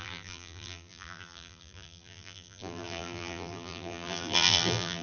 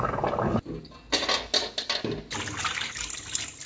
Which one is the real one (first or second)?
second